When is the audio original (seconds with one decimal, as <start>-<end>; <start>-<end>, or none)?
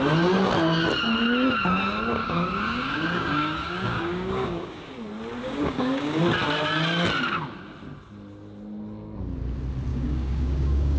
0.0-2.2; 4.9-5.4; 6.2-9.9